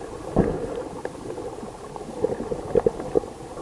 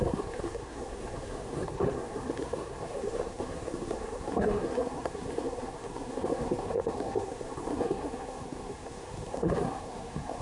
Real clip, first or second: first